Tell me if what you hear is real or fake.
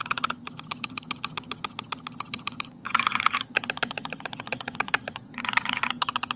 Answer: fake